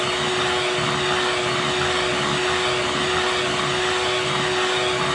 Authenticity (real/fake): real